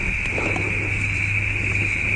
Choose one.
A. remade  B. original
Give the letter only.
B